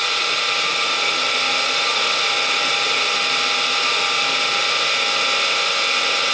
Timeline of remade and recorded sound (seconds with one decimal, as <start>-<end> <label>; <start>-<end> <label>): 0.0-6.3 recorded